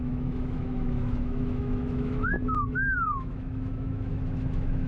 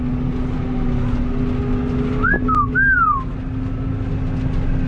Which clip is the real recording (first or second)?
second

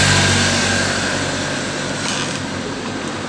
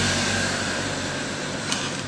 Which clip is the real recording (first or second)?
first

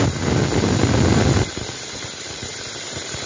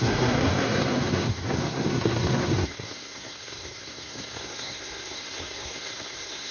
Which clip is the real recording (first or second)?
first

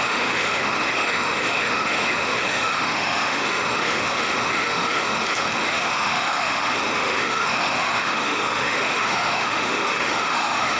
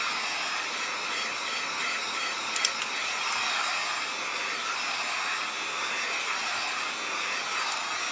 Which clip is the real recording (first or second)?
second